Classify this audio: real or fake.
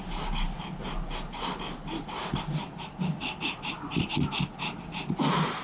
real